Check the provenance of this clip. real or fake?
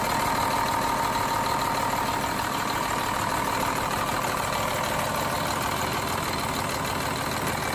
real